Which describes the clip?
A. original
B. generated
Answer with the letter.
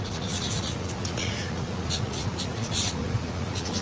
B